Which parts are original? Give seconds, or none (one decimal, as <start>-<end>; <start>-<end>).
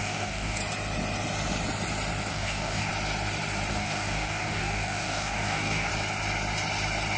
0.6-2.3; 2.9-3.7; 5.9-7.2